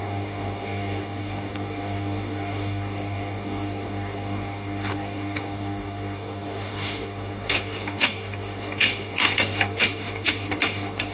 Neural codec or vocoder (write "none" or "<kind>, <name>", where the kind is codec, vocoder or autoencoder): codec, DAC